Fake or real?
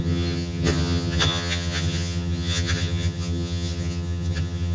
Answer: fake